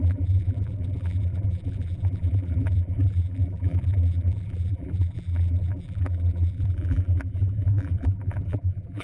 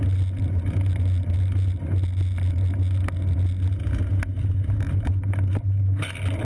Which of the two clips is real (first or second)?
second